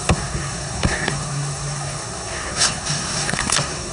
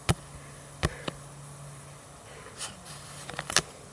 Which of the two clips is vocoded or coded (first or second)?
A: first